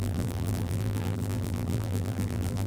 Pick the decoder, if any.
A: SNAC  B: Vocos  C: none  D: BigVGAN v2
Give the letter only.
D